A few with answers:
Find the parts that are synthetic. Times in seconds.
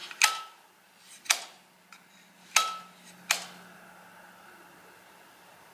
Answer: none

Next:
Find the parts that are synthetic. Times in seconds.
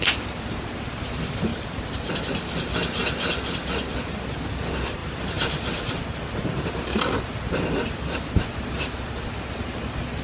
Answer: 1.5-2.2 (vocoder, BigVGAN v2); 5.0-9.3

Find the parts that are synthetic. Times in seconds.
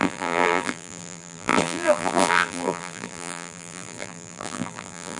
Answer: 0.0-5.2 (vocoder, BigVGAN v2)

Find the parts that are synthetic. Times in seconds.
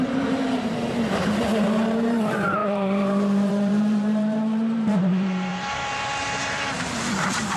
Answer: 0.0-7.6 (vocoder, BigVGAN v2)